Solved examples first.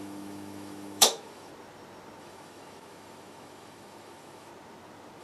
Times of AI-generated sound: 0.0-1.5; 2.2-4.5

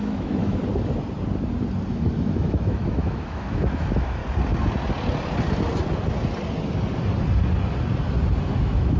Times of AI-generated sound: 0.0-0.6; 1.9-4.2; 8.5-9.0